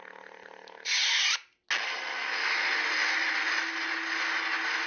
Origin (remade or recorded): recorded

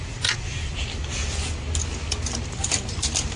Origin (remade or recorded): recorded